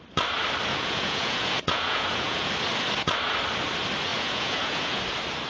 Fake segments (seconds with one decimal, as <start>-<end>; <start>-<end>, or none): 0.7-2.5; 4.1-5.0